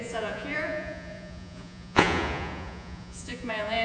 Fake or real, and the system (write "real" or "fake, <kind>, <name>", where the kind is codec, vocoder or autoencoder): fake, vocoder, Vocos